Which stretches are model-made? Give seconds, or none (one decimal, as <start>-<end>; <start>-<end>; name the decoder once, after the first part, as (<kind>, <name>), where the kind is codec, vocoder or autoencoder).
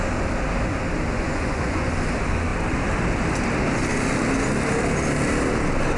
1.1-1.9 (vocoder, Vocos)